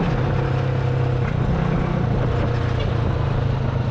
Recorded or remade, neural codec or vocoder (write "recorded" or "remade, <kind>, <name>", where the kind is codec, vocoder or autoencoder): recorded